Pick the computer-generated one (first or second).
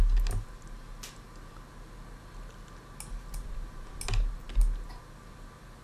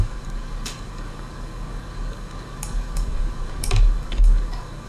second